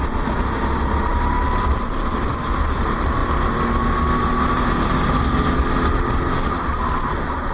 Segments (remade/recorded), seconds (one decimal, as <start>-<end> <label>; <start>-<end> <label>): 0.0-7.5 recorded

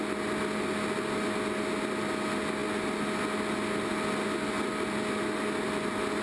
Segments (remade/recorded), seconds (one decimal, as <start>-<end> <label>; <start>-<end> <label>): 0.0-6.2 recorded

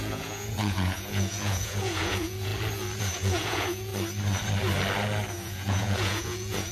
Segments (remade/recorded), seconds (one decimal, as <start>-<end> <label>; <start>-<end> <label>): 0.0-2.5 remade; 2.5-3.0 recorded; 3.0-3.9 remade; 3.9-5.3 recorded; 5.3-6.7 remade

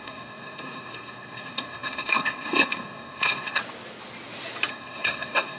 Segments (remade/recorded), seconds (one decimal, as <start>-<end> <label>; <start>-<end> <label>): 0.0-3.6 remade; 3.6-4.7 recorded; 4.7-5.6 remade

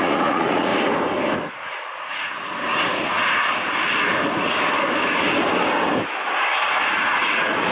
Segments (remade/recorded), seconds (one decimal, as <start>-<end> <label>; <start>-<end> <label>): 0.0-0.7 remade; 0.7-1.4 recorded; 1.4-2.3 remade; 2.3-6.9 recorded; 6.9-7.7 remade